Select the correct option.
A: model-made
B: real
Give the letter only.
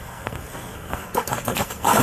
A